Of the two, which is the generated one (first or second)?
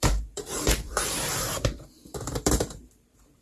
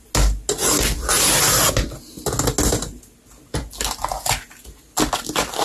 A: first